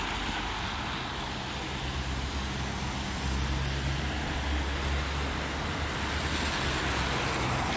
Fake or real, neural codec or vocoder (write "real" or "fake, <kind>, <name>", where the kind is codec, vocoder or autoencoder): real